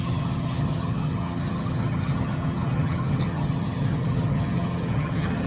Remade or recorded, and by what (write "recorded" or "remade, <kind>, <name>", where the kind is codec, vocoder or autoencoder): remade, vocoder, HiFi-GAN